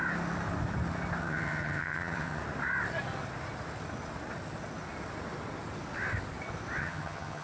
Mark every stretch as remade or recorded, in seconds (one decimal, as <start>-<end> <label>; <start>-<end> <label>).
0.0-1.2 recorded; 1.2-2.4 remade; 2.4-6.8 recorded; 6.8-7.4 remade